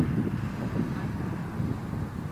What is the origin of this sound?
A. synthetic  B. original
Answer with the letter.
B